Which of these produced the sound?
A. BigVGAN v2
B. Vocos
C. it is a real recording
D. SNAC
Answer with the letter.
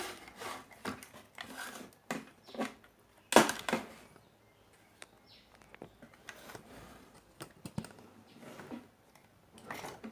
C